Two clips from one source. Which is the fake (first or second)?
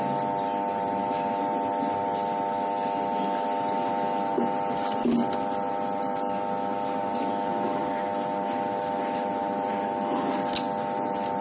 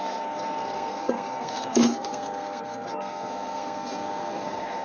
second